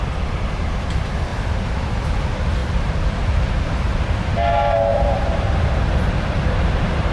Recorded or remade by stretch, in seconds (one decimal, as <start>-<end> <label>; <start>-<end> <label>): 0.0-1.3 recorded; 1.3-1.9 remade; 1.9-2.6 recorded; 2.6-4.1 remade; 4.1-4.9 recorded; 4.9-7.1 remade

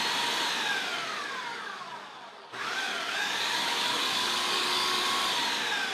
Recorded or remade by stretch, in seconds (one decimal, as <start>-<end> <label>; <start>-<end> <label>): 0.0-1.5 recorded; 1.5-5.0 remade; 5.0-5.9 recorded

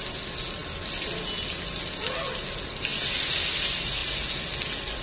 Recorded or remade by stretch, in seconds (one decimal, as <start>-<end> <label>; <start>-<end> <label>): 0.0-5.0 recorded

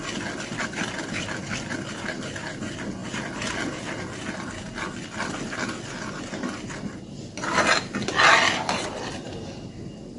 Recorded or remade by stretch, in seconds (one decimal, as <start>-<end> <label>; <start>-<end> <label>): 0.0-10.2 recorded

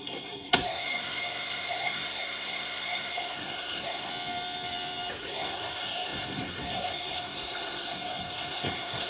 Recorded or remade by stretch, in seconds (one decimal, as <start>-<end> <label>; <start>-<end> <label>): 0.0-4.1 remade; 4.1-5.2 recorded; 5.2-9.1 remade